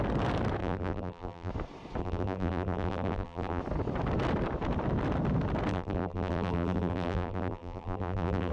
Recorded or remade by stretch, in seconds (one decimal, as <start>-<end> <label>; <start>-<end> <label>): 0.0-0.6 recorded; 0.6-1.5 remade; 1.5-2.0 recorded; 2.0-3.6 remade; 3.6-5.7 recorded; 5.7-8.5 remade